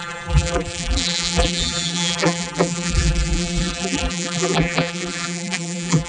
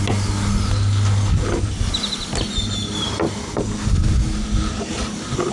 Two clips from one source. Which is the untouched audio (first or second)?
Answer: second